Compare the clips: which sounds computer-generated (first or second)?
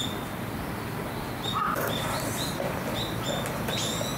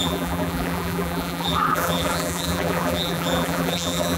second